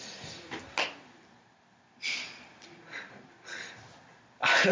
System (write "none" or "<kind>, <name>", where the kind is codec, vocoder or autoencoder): none